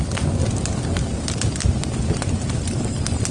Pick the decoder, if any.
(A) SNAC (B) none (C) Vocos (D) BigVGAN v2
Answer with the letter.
B